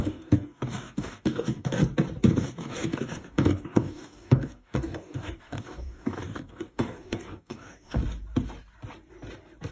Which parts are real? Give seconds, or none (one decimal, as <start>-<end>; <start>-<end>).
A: 1.8-2.3; 8.0-9.7